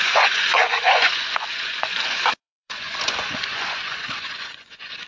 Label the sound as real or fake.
fake